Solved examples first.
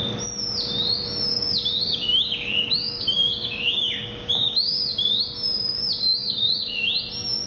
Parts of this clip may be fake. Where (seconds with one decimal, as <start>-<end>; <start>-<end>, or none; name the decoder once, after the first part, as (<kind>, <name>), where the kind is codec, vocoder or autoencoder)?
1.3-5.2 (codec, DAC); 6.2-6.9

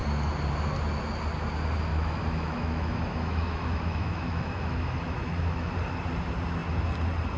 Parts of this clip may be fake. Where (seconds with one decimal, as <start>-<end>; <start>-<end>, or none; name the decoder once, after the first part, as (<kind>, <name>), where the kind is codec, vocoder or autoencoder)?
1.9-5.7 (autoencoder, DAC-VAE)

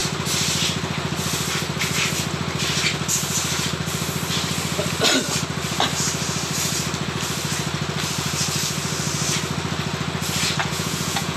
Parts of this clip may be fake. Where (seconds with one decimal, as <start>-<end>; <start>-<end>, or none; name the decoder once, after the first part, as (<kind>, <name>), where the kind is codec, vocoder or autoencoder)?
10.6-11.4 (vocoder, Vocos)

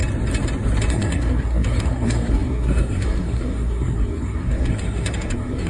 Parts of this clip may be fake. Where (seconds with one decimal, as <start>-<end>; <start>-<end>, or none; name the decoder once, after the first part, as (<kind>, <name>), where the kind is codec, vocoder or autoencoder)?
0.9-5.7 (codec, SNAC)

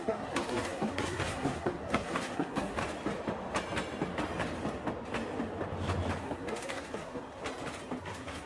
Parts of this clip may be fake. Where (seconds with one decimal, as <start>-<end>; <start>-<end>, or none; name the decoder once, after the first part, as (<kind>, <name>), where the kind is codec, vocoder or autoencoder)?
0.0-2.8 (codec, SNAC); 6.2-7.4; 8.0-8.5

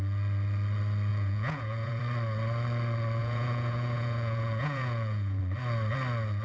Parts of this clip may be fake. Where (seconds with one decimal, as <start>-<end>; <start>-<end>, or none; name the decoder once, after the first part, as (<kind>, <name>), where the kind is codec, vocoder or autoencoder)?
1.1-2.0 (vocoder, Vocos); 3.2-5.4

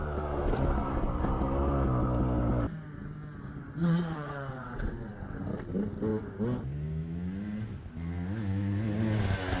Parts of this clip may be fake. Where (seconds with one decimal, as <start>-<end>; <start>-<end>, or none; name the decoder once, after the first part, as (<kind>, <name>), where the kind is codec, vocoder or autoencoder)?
3.8-5.1 (vocoder, WaveNeXt)